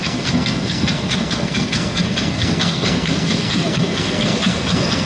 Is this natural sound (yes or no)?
no